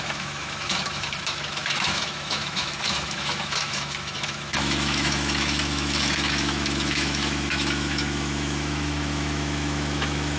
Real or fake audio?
fake